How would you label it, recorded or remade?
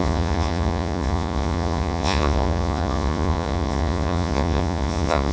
remade